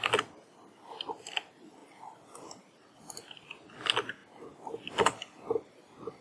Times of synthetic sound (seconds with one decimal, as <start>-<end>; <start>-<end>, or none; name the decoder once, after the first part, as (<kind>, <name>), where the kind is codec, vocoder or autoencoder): none